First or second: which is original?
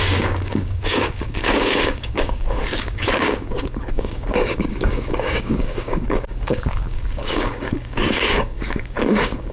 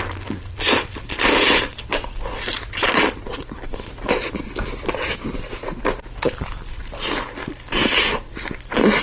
second